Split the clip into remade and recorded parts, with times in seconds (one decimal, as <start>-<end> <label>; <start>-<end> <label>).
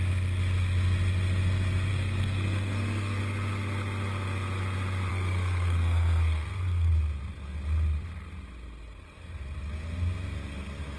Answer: 0.0-1.9 recorded; 1.9-3.2 remade; 3.2-5.1 recorded; 5.1-6.9 remade; 6.9-11.0 recorded